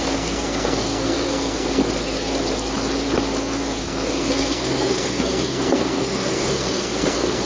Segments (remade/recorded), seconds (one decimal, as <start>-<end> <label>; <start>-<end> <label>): 0.0-1.8 remade; 1.8-3.8 recorded; 3.8-7.5 remade